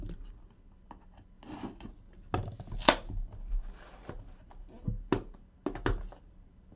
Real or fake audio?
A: real